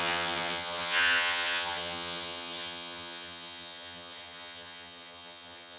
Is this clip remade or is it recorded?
remade